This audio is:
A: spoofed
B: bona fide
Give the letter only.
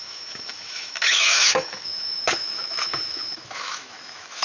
A